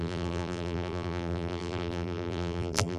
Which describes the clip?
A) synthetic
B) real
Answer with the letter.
A